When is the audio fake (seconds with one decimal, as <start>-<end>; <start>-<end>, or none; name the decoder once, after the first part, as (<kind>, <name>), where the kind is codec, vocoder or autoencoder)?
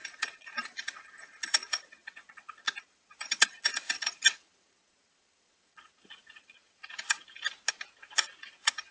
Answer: 0.0-7.2 (vocoder, Vocos); 8.4-8.9